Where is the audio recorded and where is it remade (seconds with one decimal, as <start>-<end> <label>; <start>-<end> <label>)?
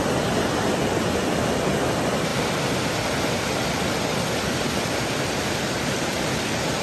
0.0-6.8 recorded